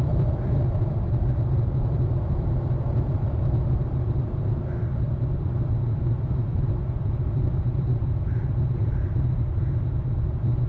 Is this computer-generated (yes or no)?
yes